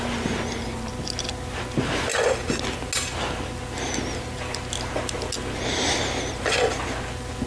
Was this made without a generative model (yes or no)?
yes